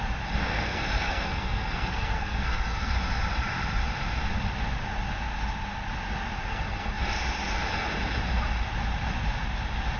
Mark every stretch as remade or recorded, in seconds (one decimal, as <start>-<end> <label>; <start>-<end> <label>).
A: 0.0-0.4 recorded; 0.4-2.9 remade; 2.9-6.5 recorded; 6.5-7.0 remade; 7.0-10.0 recorded